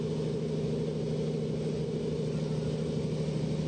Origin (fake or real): real